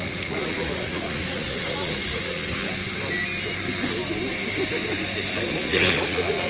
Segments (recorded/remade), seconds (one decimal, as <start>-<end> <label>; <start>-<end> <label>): 0.0-2.6 remade; 2.6-5.5 recorded; 5.5-6.5 remade